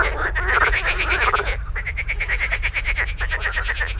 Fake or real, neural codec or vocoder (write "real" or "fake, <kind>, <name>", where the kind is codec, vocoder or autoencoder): real